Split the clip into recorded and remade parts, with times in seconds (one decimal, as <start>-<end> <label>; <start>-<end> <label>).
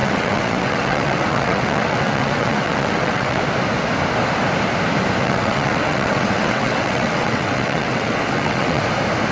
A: 0.0-3.4 remade; 3.4-5.2 recorded; 5.2-8.8 remade; 8.8-9.3 recorded